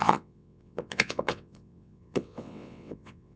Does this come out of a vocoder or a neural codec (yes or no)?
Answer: yes